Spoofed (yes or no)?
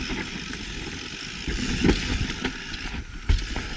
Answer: no